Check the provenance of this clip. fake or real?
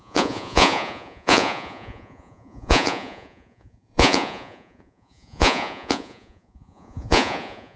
fake